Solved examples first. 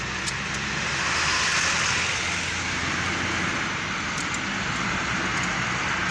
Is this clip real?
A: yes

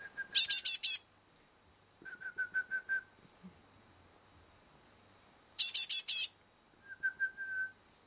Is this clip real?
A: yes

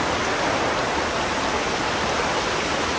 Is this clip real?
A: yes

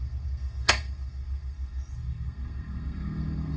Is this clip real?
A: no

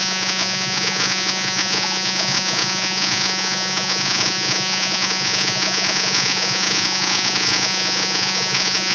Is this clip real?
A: no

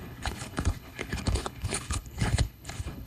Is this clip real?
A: no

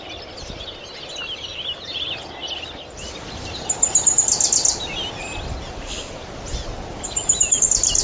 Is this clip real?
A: yes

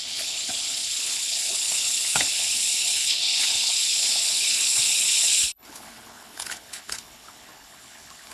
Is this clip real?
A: no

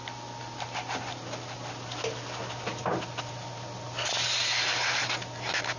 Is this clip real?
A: yes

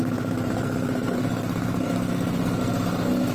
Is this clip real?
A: no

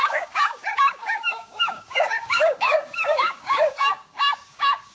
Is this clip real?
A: no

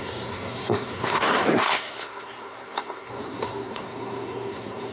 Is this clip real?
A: no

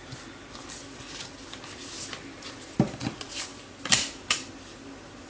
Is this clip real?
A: yes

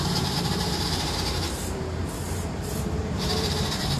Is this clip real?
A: no